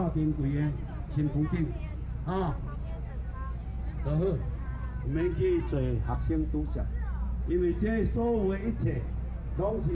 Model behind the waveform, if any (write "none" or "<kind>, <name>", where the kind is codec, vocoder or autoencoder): none